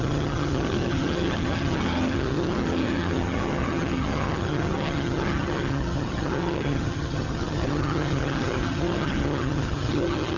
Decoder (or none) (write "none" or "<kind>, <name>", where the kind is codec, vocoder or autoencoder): vocoder, HiFi-GAN